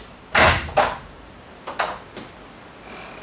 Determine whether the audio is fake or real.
real